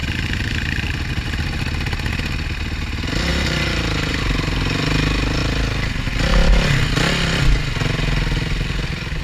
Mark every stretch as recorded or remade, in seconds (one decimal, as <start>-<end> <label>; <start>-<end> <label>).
0.0-1.6 remade; 1.6-3.3 recorded; 3.3-4.2 remade; 4.2-9.2 recorded